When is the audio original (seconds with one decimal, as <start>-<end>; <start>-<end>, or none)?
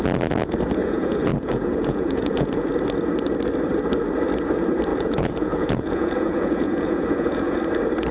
0.0-0.8; 2.7-4.9; 7.6-8.1